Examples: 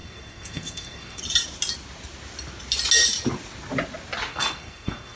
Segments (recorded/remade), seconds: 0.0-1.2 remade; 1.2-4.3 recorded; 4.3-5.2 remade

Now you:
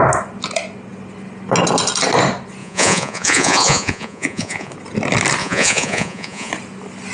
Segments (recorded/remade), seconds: 0.0-2.6 recorded; 2.6-4.7 remade; 4.7-5.4 recorded; 5.4-6.5 remade; 6.5-7.1 recorded

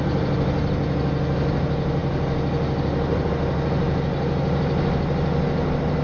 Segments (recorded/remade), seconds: 0.0-6.0 recorded

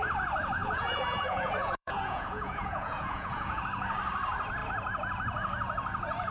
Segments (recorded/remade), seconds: 0.0-0.6 recorded; 0.6-3.6 remade; 3.6-6.3 recorded

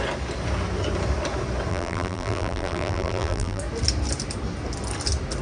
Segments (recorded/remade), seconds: 0.0-1.7 recorded; 1.7-3.6 remade; 3.6-5.4 recorded

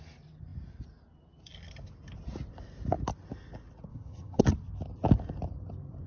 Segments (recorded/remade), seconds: 0.0-3.9 recorded; 3.9-4.4 remade; 4.4-6.1 recorded

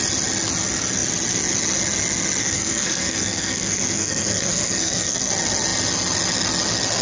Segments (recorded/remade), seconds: 0.0-2.4 recorded; 2.4-5.3 remade; 5.3-7.0 recorded

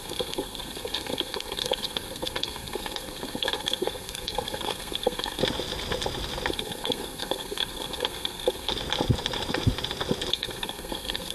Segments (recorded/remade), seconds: 0.0-5.4 remade; 5.4-6.5 recorded; 6.5-8.7 remade; 8.7-10.3 recorded; 10.3-11.3 remade